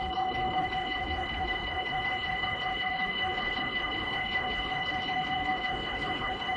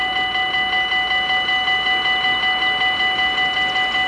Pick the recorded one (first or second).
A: second